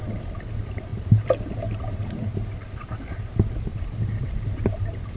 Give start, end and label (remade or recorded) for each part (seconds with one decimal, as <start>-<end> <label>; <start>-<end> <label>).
0.0-0.9 remade; 0.9-3.8 recorded; 3.8-5.2 remade